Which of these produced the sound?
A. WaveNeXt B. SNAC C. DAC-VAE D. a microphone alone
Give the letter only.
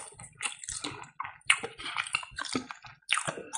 D